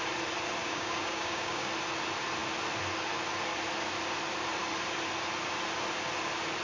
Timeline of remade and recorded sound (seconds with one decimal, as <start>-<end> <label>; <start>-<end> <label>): 0.0-0.6 recorded; 0.6-1.7 remade; 1.7-6.6 recorded